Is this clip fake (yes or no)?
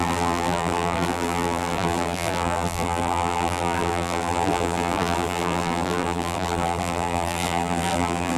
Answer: yes